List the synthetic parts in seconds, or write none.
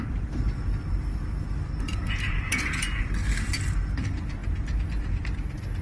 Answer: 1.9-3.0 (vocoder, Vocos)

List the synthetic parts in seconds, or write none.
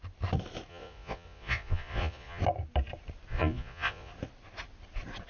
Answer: 0.7-2.4 (vocoder, Vocos); 3.3-4.1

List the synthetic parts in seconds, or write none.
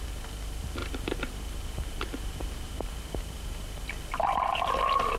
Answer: 0.8-3.8 (vocoder, BigVGAN v2)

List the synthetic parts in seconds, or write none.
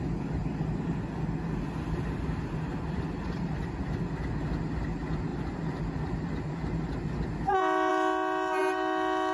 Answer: 5.3-6.9 (vocoder, BigVGAN v2)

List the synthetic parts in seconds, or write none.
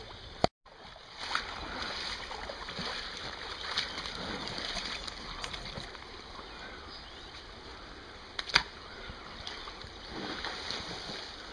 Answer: none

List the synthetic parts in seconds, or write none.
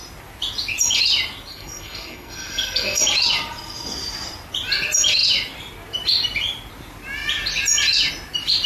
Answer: 1.5-3.0 (codec, SNAC)